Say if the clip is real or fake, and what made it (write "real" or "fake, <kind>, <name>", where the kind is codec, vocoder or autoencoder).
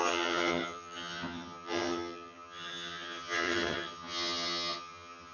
fake, vocoder, HiFi-GAN